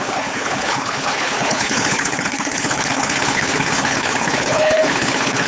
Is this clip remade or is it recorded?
remade